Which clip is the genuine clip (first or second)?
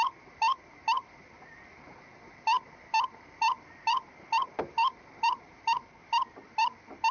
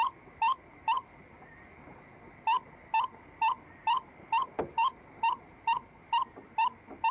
second